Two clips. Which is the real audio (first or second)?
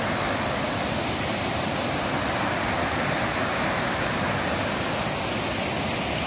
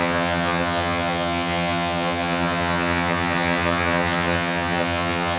first